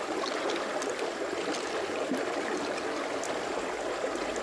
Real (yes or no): yes